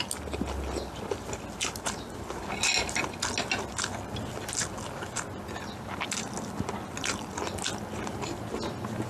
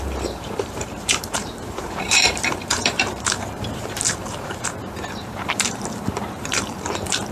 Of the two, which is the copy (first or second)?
second